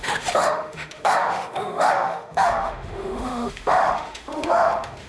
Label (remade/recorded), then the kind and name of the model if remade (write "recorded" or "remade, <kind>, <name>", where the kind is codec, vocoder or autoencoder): remade, autoencoder, DAC-VAE